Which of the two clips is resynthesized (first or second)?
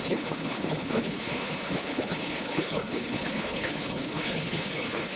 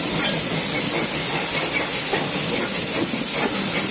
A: first